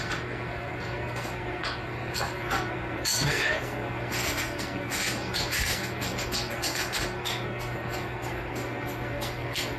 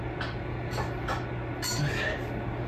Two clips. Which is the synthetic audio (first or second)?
first